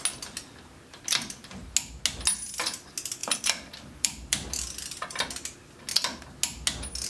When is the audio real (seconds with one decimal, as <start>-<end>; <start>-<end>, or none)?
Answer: 0.0-3.2; 5.2-7.1

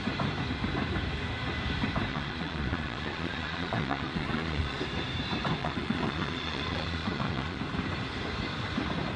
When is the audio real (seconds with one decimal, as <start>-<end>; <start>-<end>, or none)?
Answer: 0.0-2.1; 4.8-5.6; 7.6-9.2

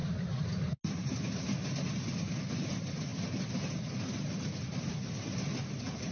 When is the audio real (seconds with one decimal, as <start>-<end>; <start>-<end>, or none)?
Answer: 0.0-6.1